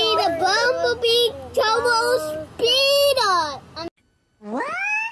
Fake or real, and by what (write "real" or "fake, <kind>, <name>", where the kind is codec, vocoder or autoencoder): real